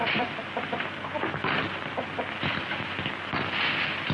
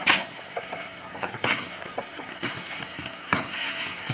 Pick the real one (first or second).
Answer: first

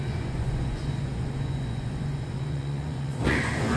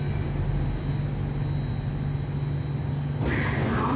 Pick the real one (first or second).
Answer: second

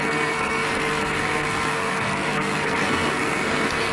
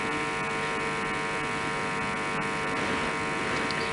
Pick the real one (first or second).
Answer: second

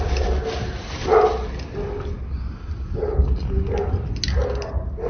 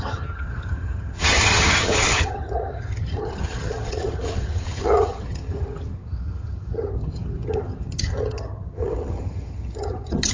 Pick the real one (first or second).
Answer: first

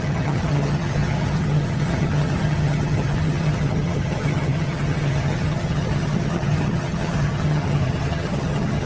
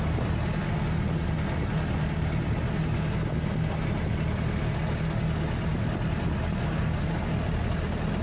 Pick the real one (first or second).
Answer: second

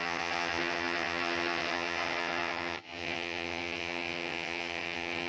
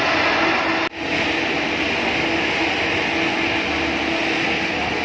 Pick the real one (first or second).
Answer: second